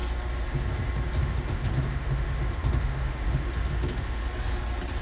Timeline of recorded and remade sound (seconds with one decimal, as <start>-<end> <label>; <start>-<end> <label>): 0.0-1.2 recorded; 1.2-4.2 remade; 4.2-5.0 recorded